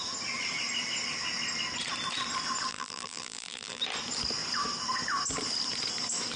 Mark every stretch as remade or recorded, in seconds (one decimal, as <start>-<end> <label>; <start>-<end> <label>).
0.0-2.7 recorded; 2.7-3.8 remade; 3.8-6.4 recorded